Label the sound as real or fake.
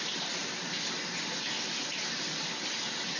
real